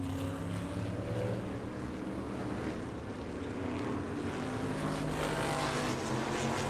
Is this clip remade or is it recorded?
recorded